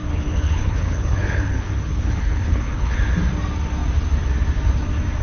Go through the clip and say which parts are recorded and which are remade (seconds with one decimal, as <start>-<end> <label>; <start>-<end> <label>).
0.0-3.0 remade; 3.0-5.2 recorded